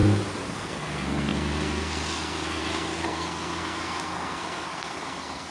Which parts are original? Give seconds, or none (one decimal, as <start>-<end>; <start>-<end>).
0.0-0.5

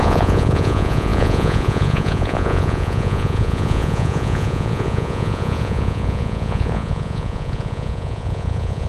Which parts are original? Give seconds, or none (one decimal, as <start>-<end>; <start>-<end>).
none

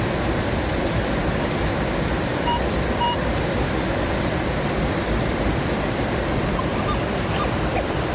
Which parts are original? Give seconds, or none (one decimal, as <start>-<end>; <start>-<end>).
0.0-2.3; 6.5-8.1

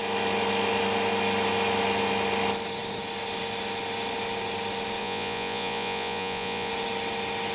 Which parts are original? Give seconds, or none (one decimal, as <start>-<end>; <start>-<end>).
0.0-5.0; 6.7-7.5